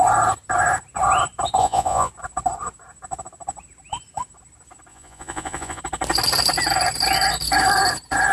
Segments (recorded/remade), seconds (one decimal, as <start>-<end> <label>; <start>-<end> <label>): 0.0-1.6 recorded; 1.6-2.1 remade; 2.1-4.9 recorded; 4.9-5.8 remade; 5.8-8.3 recorded